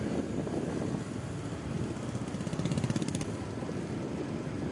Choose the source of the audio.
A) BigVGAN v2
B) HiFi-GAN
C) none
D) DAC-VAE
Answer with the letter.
A